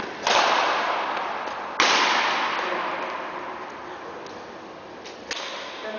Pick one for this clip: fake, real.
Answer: real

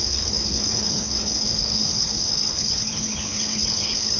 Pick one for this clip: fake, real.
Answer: fake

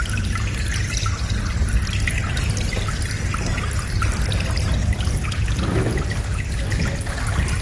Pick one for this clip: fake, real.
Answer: real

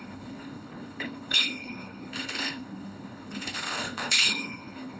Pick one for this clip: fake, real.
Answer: fake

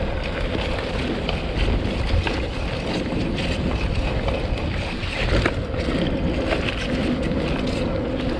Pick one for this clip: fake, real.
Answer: real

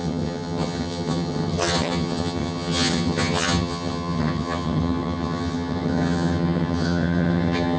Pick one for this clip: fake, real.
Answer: fake